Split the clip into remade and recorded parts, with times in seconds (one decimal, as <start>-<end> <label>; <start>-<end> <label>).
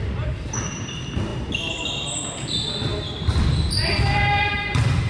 0.0-1.3 remade; 1.3-4.4 recorded; 4.4-5.1 remade